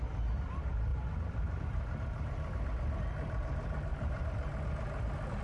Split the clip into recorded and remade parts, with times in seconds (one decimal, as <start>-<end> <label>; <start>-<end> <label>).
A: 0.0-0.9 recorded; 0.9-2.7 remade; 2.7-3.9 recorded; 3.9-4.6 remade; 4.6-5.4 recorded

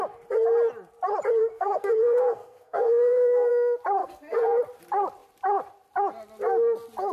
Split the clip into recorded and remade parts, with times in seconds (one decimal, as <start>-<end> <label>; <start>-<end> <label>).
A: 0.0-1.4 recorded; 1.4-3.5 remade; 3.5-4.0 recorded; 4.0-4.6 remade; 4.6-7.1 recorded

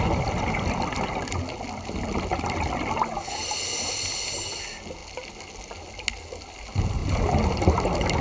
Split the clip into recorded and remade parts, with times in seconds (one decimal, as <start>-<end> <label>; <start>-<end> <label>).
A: 0.0-8.2 recorded